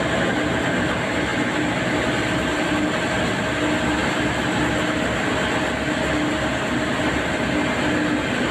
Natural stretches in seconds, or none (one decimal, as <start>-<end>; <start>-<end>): 0.0-8.5